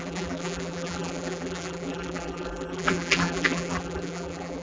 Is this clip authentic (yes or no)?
no